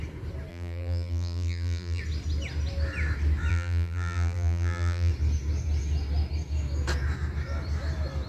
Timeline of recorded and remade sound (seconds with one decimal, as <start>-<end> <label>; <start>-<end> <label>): 0.0-0.5 recorded; 0.5-2.0 remade; 2.0-3.5 recorded; 3.5-5.1 remade; 5.1-8.3 recorded